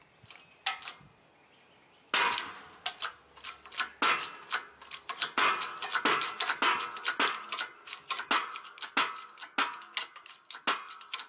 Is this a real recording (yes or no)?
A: yes